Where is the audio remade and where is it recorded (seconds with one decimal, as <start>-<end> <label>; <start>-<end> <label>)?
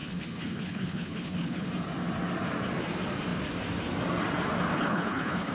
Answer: 0.0-1.7 remade; 1.7-4.7 recorded; 4.7-5.5 remade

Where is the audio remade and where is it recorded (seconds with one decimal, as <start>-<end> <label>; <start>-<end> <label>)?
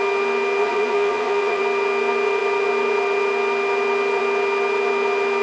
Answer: 0.0-0.6 recorded; 0.6-1.6 remade; 1.6-5.4 recorded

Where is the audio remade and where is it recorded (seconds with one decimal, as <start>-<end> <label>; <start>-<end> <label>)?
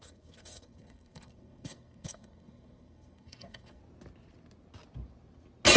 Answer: 0.0-3.8 remade; 3.8-5.8 recorded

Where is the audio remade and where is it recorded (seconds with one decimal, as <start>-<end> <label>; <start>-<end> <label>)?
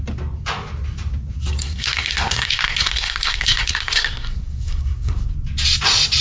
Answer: 0.0-1.6 recorded; 1.6-5.3 remade; 5.3-6.2 recorded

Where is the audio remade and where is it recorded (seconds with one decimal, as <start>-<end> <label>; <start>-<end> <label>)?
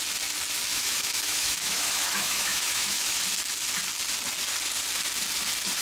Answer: 0.0-0.7 recorded; 0.7-3.4 remade; 3.4-5.8 recorded